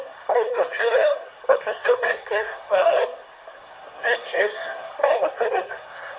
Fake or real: fake